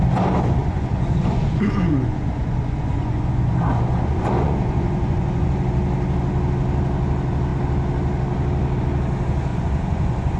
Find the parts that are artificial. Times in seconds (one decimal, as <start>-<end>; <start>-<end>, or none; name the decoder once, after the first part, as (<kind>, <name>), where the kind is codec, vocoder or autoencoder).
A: 0.6-5.5 (vocoder, Vocos); 9.5-10.4